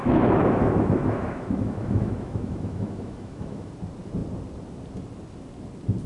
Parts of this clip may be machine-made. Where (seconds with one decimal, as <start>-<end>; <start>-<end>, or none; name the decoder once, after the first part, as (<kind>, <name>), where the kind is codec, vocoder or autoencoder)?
0.0-3.7 (autoencoder, DAC-VAE)

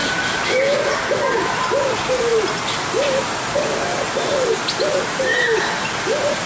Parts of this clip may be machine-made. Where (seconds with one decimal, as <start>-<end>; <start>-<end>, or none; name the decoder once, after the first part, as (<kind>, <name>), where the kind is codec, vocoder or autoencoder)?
none

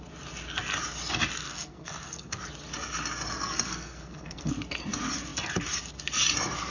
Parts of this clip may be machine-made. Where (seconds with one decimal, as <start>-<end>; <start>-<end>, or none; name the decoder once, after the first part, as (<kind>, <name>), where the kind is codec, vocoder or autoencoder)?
1.4-2.4 (codec, SNAC); 3.7-4.5

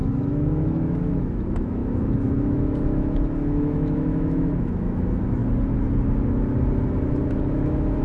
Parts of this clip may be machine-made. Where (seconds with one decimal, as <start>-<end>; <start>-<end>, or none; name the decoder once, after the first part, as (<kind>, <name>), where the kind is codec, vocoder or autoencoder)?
0.0-5.4 (autoencoder, DAC-VAE); 7.4-8.0

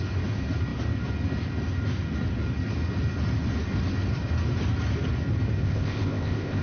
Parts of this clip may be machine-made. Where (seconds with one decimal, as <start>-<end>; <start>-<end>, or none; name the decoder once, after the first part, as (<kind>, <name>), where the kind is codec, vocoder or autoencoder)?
5.6-6.6 (codec, ZipCodec)

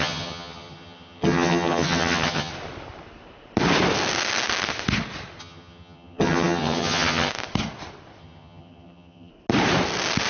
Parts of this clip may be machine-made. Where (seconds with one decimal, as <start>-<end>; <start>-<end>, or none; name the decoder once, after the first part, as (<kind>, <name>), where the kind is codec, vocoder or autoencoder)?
0.0-2.5 (vocoder, HiFi-GAN); 5.4-7.3; 8.2-9.3

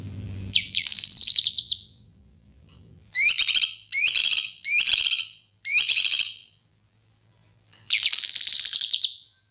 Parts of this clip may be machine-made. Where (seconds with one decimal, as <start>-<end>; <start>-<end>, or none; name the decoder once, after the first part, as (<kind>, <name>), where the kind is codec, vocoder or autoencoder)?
0.0-9.5 (vocoder, BigVGAN v2)